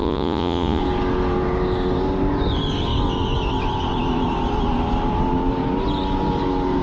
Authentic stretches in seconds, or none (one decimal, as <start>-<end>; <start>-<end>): 0.8-6.8